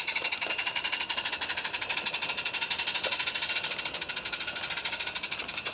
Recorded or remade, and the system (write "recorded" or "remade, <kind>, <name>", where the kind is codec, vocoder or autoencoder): recorded